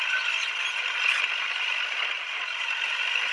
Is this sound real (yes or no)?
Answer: no